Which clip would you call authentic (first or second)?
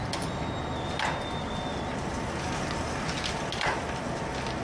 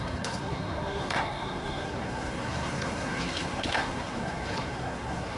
first